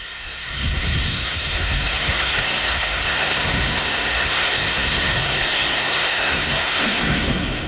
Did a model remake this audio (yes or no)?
yes